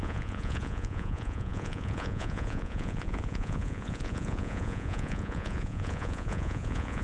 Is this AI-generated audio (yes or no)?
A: yes